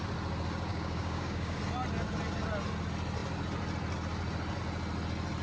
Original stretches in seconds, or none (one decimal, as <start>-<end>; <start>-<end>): 0.0-0.7; 1.6-5.4